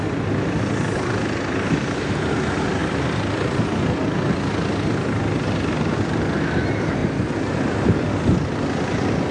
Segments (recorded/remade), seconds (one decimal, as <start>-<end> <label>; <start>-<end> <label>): 0.0-9.3 recorded